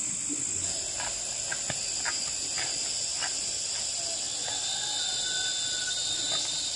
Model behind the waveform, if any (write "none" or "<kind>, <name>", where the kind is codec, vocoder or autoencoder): none